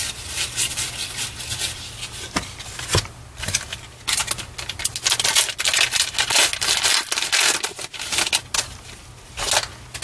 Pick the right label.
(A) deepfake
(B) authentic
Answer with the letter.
B